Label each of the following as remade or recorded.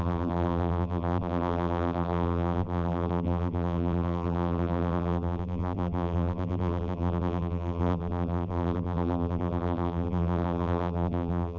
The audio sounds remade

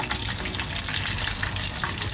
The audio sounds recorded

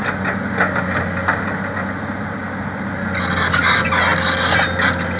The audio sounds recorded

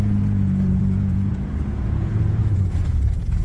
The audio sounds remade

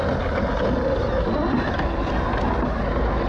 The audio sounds recorded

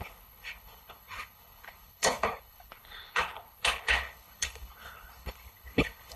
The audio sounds remade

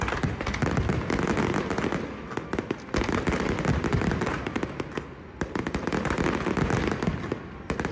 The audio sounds recorded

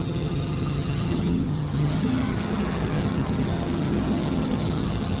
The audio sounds remade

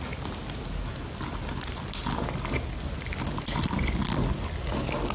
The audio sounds recorded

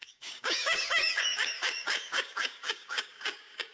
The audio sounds remade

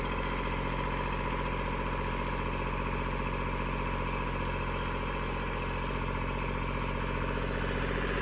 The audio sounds recorded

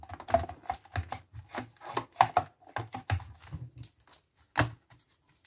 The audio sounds recorded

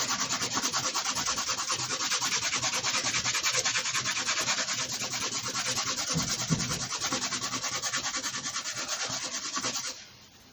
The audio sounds recorded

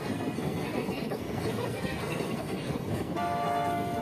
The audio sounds remade